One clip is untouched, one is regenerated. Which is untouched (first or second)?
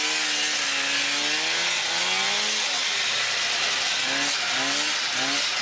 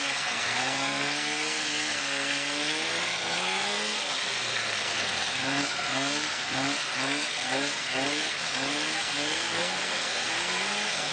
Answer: first